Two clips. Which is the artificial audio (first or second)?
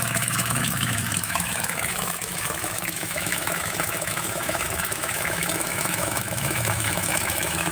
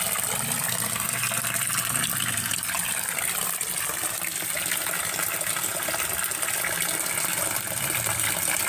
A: first